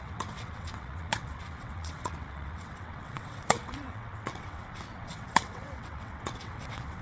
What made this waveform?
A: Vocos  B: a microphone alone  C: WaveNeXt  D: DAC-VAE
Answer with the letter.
C